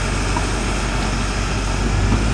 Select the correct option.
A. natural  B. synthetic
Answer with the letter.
A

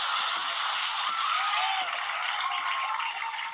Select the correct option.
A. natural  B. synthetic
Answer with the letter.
A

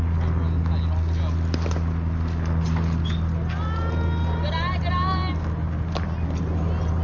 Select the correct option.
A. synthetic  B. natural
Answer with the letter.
B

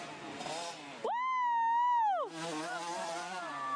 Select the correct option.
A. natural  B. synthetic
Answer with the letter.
A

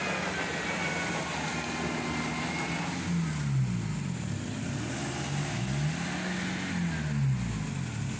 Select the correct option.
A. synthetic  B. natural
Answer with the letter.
B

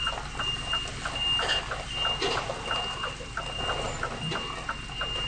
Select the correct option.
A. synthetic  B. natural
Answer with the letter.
B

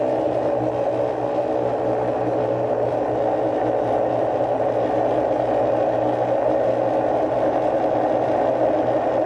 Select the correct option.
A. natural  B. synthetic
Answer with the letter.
A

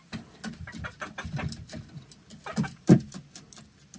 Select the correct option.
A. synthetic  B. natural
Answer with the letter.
B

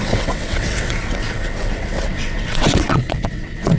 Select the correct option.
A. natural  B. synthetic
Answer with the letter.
B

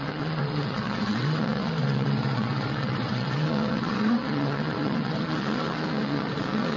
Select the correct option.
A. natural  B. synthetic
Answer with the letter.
B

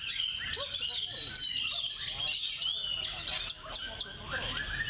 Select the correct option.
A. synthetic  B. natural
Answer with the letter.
B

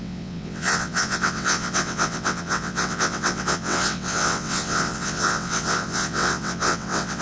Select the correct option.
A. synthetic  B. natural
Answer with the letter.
A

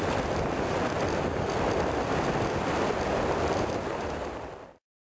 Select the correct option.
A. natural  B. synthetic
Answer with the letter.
A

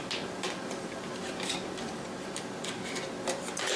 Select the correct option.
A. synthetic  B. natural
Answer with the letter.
B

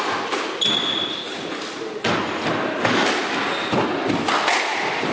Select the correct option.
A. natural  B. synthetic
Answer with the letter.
A